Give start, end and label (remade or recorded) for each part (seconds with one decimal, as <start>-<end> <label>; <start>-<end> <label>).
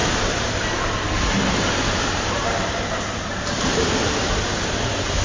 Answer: 0.0-3.1 remade; 3.1-4.0 recorded; 4.0-5.2 remade